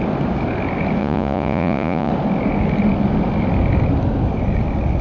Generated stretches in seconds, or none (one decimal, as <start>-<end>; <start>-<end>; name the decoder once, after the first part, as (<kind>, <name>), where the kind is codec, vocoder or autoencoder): 1.0-2.1 (vocoder, Vocos)